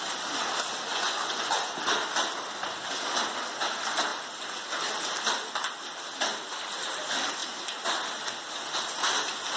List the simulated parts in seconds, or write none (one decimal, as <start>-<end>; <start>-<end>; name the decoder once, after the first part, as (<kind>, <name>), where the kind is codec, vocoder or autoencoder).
0.9-1.5 (vocoder, Vocos)